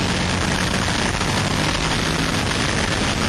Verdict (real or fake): real